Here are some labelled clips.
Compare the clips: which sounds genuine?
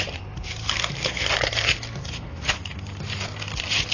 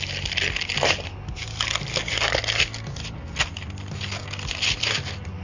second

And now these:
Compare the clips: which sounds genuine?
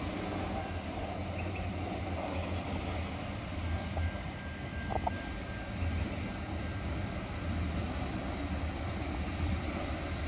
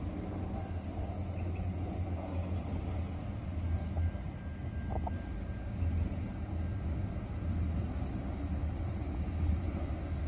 second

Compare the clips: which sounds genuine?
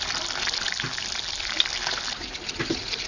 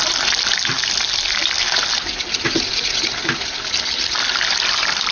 first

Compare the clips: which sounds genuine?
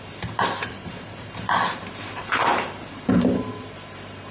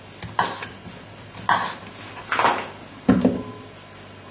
second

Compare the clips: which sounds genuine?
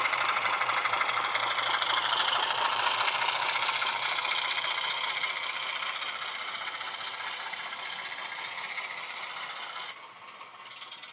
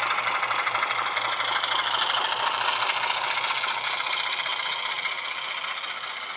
second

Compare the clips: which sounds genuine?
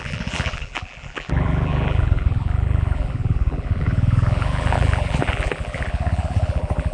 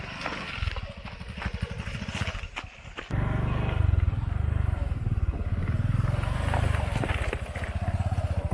second